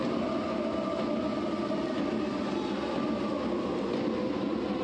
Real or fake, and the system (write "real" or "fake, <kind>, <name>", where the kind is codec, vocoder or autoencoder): real